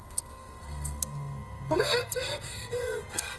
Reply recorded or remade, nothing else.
remade